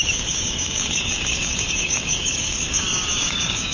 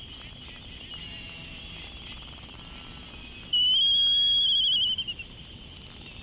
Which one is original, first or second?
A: second